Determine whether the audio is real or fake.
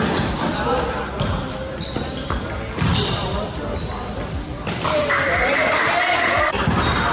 fake